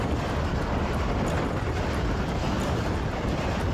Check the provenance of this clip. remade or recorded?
recorded